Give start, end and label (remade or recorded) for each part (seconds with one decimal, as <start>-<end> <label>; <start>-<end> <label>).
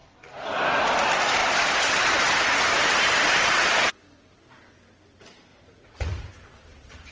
0.0-5.5 recorded; 5.5-6.3 remade; 6.3-7.1 recorded